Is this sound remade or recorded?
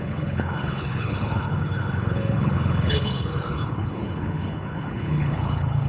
remade